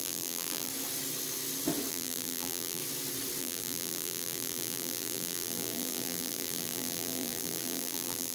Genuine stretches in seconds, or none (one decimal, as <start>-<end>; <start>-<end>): 0.7-1.9; 2.8-3.4